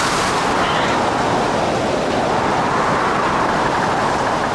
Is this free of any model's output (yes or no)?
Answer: yes